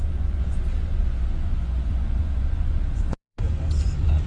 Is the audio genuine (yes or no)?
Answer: no